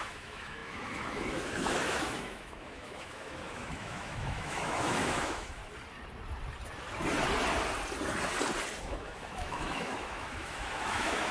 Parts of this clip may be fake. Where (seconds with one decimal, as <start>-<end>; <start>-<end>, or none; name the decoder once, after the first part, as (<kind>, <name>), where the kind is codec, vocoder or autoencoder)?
0.0-5.6 (autoencoder, DAC-VAE); 8.8-11.3